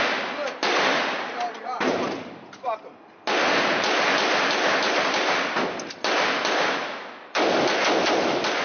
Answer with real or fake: real